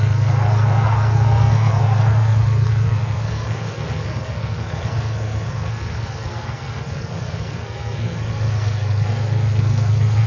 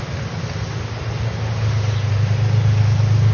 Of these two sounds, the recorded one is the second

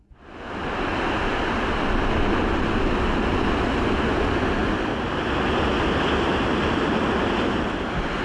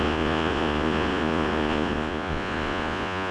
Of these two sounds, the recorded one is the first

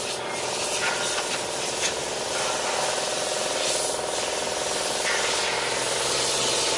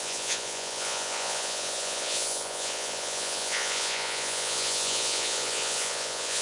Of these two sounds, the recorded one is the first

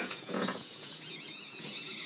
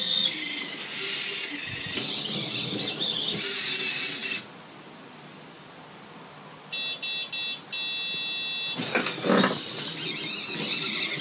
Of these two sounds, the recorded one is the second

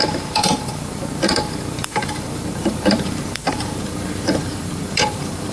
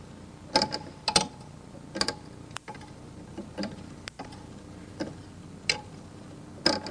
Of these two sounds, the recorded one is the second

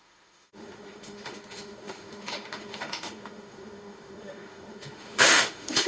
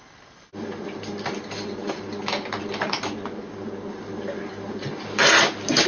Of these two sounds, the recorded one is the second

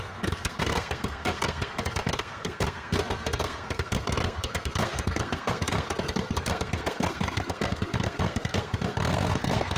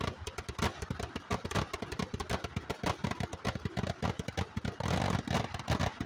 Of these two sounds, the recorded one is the second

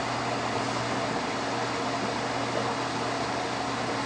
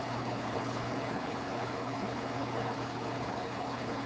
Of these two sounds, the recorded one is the first